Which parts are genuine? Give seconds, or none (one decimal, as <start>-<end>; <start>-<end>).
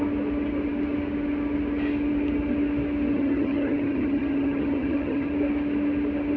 0.0-3.1; 5.3-6.4